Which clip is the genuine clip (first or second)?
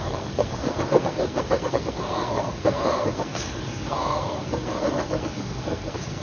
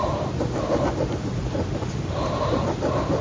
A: second